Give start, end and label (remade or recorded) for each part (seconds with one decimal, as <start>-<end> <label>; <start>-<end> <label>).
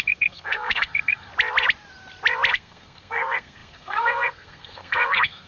0.0-1.3 remade; 1.3-2.5 recorded; 2.5-5.5 remade